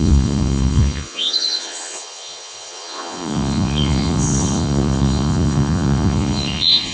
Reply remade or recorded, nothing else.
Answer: remade